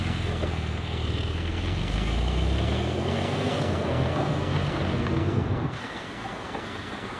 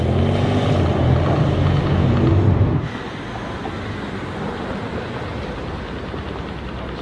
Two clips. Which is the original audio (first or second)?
second